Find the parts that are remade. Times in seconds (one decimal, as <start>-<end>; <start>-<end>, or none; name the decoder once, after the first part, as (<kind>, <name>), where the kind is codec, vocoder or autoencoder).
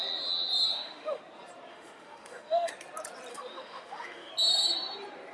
0.7-1.2 (autoencoder, DAC-VAE); 1.7-2.7; 3.3-4.3